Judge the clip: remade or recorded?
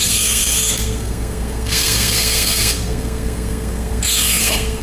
remade